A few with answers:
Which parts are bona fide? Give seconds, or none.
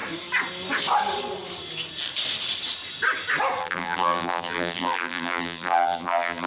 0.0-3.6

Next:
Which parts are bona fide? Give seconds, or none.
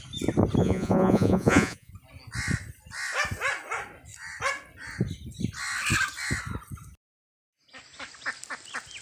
0.0-0.6; 1.9-9.0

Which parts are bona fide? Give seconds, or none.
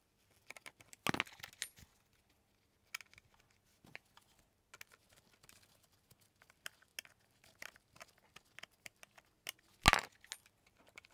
0.0-11.1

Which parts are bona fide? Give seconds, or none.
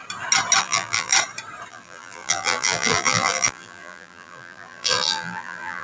0.0-0.6; 1.1-1.7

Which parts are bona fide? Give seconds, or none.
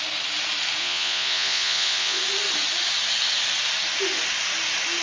0.0-0.8; 2.2-5.0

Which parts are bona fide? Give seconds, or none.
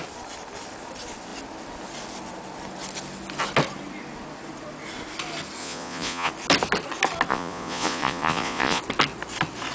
0.0-5.6; 6.3-7.3; 8.8-9.7